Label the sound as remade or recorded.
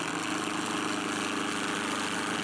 recorded